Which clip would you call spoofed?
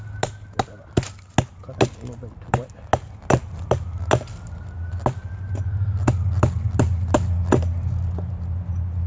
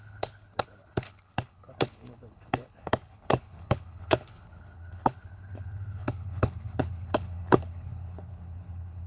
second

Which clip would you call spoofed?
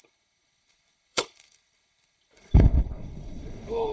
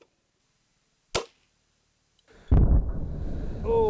first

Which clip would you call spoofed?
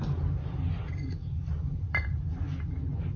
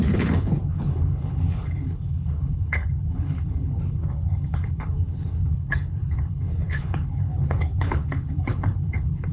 second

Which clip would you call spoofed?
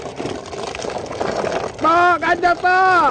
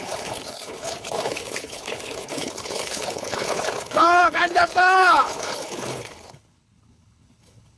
second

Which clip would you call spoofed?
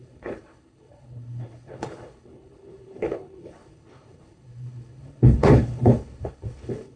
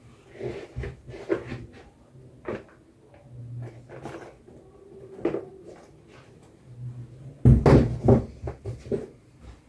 first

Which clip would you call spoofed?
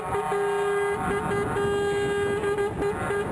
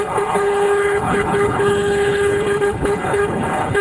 second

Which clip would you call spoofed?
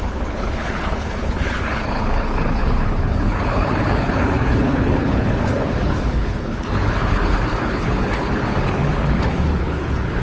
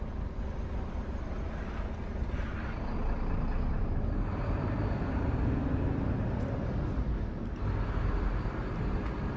first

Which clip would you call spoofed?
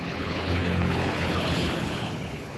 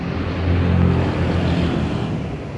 first